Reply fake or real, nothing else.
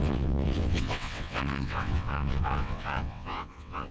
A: fake